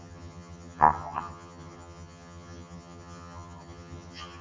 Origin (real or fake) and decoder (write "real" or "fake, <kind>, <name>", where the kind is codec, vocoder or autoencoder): fake, vocoder, HiFi-GAN